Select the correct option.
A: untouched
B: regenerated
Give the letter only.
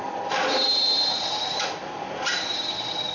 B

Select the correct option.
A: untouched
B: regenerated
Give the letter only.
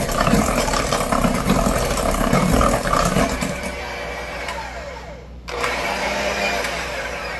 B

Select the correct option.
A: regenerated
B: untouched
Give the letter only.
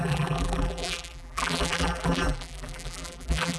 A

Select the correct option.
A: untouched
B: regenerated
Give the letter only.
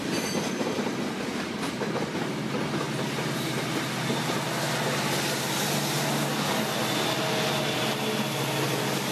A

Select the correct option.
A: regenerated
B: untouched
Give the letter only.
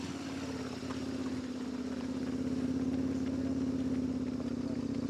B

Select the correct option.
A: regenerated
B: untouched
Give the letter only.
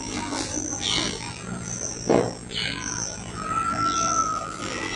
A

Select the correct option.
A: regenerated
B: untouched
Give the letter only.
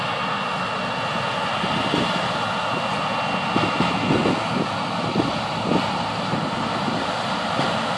B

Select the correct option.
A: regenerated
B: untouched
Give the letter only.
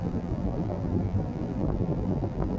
A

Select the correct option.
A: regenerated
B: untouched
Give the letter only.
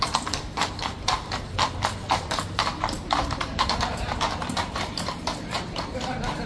A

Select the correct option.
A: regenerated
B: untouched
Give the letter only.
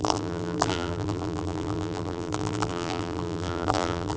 A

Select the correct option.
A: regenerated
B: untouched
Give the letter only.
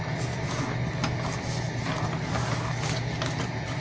B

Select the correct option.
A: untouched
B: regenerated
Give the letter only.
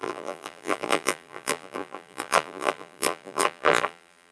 B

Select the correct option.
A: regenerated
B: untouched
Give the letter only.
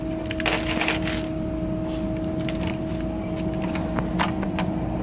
A